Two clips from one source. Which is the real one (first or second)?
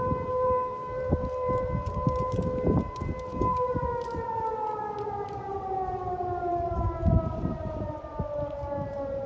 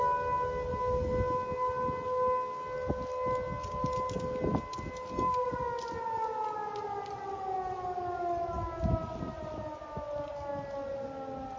second